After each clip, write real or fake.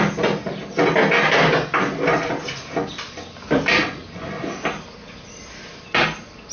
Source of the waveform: real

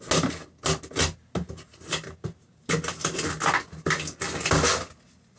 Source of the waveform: real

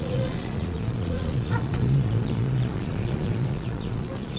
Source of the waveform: fake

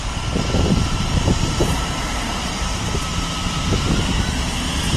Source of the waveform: fake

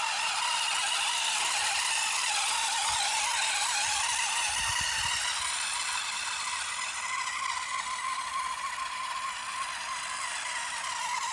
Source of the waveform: real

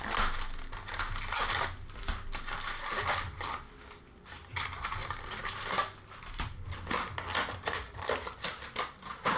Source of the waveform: real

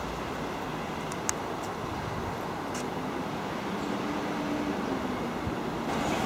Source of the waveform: real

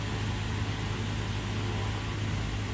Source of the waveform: real